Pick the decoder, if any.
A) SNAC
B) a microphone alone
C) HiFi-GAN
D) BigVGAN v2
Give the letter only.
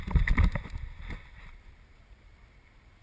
D